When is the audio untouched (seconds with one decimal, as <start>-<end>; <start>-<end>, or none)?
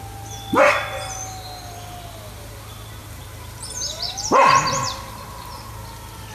0.0-3.0; 5.7-6.3